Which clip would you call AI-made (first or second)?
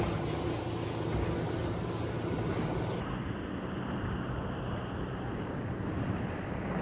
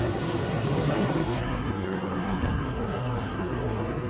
second